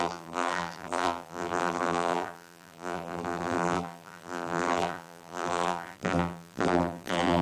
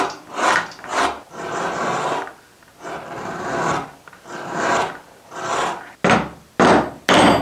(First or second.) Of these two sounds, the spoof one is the first